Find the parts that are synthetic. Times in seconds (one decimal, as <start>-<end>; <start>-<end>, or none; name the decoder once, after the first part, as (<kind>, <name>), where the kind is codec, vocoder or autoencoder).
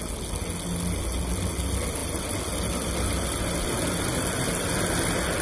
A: none